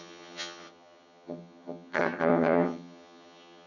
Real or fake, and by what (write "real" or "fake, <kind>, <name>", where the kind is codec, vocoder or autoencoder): fake, vocoder, HiFi-GAN